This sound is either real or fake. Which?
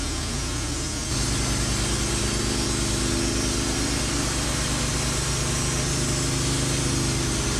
real